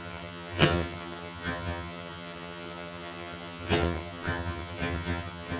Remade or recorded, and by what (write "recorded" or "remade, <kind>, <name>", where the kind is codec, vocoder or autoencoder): remade, vocoder, HiFi-GAN